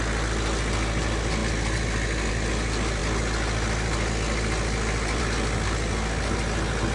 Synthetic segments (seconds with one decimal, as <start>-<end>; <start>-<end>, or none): none